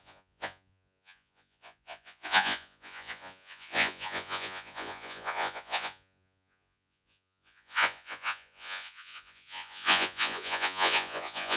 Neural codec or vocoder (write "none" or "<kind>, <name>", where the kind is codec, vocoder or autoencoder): vocoder, Vocos